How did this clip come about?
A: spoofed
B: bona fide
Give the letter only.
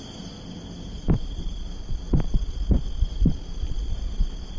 B